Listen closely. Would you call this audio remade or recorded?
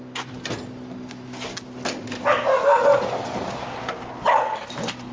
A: recorded